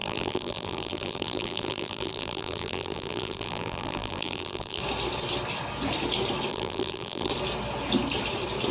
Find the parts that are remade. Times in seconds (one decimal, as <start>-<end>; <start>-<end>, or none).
0.0-4.8; 6.5-7.3